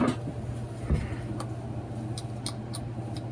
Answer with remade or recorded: recorded